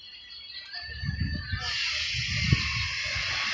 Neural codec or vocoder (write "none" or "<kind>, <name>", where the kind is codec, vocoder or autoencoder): none